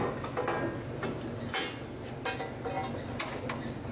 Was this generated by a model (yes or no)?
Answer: no